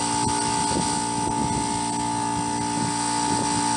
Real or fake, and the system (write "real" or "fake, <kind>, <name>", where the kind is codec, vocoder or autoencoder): real